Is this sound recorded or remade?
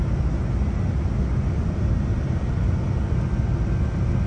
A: recorded